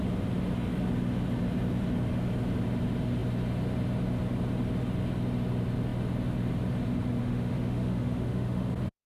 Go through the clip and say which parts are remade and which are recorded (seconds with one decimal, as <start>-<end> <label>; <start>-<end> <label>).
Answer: 0.0-7.2 recorded; 7.2-8.7 remade; 8.7-9.1 recorded

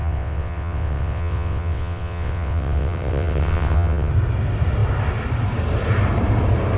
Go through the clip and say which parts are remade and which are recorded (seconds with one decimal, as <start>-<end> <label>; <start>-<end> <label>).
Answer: 0.0-4.1 remade; 4.1-6.8 recorded

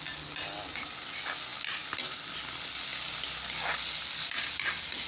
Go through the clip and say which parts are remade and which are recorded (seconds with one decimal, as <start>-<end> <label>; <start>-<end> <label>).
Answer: 0.0-5.1 recorded

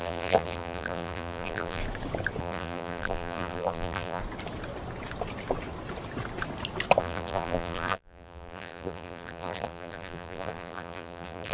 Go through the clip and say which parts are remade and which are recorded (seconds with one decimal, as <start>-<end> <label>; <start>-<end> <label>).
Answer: 0.0-1.8 remade; 1.8-2.4 recorded; 2.4-4.2 remade; 4.2-7.0 recorded; 7.0-11.5 remade

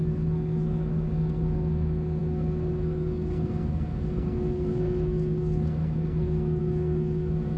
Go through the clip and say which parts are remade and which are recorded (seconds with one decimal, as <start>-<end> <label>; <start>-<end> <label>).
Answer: 0.0-7.6 remade

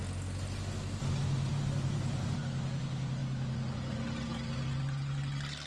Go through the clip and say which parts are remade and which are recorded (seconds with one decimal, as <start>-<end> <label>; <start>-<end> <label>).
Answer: 0.0-1.5 recorded; 1.5-2.4 remade; 2.4-3.2 recorded; 3.2-4.0 remade; 4.0-5.7 recorded

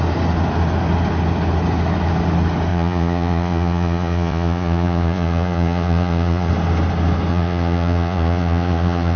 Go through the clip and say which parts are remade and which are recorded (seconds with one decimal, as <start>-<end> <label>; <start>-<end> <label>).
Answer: 0.0-2.7 recorded; 2.7-6.5 remade; 6.5-7.3 recorded; 7.3-9.2 remade

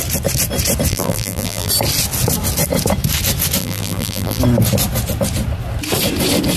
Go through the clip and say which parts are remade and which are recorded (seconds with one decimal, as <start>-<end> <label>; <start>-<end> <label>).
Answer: 0.0-0.9 recorded; 0.9-1.7 remade; 1.7-3.6 recorded; 3.6-4.4 remade; 4.4-6.6 recorded